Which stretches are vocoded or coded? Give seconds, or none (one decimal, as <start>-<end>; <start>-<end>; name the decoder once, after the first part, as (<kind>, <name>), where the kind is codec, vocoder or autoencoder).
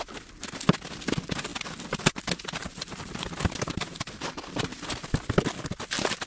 1.5-2.2 (vocoder, BigVGAN v2); 2.6-4.9